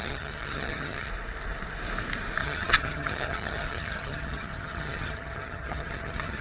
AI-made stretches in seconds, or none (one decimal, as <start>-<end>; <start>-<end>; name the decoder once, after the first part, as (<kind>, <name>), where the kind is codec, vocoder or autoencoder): 0.0-1.1 (vocoder, HiFi-GAN); 2.4-6.4